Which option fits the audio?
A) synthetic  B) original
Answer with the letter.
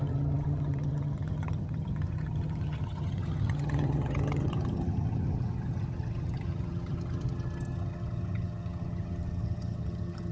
A